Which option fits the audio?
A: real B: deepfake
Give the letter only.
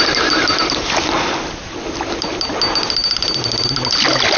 A